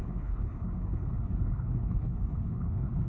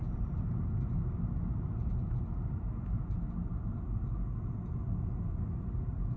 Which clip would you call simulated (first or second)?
first